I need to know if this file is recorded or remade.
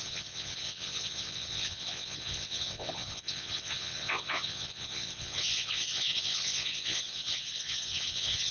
remade